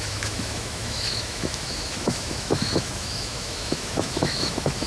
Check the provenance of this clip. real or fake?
fake